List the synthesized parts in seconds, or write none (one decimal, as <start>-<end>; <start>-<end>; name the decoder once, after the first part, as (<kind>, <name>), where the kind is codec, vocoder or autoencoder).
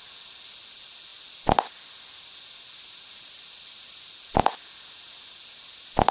none